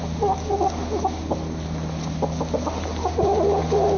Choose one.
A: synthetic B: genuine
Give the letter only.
B